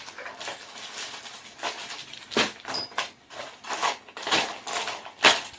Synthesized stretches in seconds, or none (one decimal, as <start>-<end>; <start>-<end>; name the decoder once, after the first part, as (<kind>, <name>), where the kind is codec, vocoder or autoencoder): 3.8-4.5 (vocoder, BigVGAN v2)